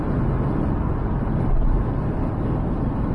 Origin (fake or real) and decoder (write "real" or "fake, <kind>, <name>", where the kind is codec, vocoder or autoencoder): real